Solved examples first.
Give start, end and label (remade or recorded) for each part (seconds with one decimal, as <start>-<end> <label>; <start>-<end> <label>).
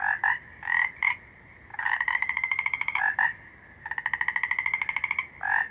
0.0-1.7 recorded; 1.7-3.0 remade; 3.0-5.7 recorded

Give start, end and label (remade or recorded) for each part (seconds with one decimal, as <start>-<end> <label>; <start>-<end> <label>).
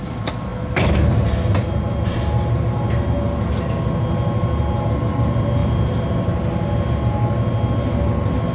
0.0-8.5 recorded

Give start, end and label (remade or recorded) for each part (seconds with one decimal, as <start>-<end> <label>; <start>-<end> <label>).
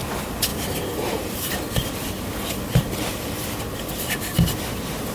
0.0-5.1 recorded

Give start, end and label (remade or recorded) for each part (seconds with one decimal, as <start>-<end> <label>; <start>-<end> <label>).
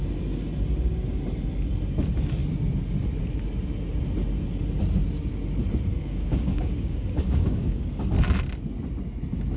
0.0-5.9 recorded; 5.9-7.8 remade; 7.8-9.6 recorded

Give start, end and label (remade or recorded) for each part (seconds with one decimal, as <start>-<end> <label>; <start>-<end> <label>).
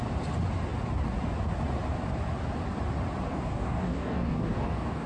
0.0-3.3 recorded; 3.3-5.1 remade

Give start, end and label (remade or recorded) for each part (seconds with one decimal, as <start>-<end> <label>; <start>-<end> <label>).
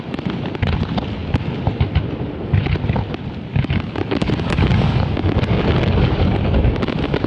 0.0-3.5 recorded; 3.5-7.3 remade